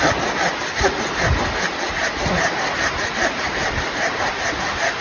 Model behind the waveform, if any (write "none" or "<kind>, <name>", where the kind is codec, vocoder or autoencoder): none